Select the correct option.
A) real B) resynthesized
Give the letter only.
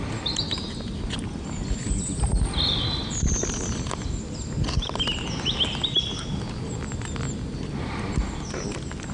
A